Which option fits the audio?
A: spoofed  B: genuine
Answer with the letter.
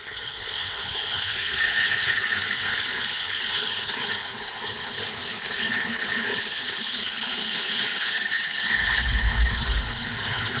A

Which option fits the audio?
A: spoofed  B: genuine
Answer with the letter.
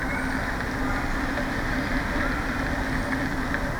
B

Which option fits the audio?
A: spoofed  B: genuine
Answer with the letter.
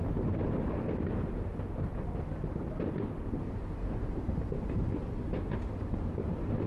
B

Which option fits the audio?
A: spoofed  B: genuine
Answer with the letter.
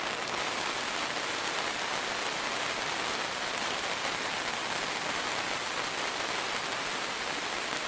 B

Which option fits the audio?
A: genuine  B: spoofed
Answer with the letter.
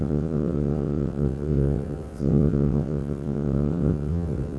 B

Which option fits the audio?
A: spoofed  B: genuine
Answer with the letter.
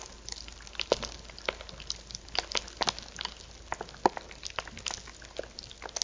B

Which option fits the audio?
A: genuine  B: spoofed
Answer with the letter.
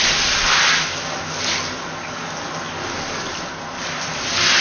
A